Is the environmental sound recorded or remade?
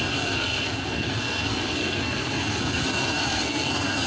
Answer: remade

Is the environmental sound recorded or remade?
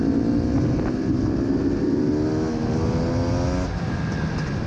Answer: recorded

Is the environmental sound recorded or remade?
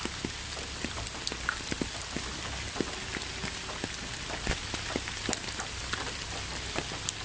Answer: recorded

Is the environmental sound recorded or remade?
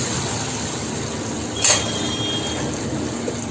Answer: recorded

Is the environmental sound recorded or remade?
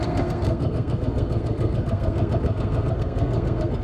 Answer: remade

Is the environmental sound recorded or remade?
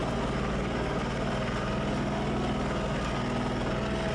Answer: recorded